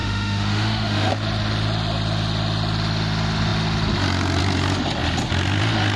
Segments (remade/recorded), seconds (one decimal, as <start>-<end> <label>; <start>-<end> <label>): 0.0-1.1 remade; 1.1-6.0 recorded